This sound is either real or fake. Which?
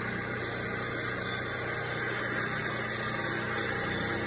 real